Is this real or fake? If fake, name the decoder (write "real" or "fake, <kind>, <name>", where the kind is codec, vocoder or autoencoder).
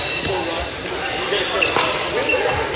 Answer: real